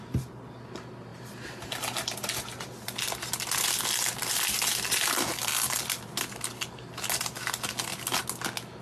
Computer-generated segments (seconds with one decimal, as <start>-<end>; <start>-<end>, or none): 5.5-6.2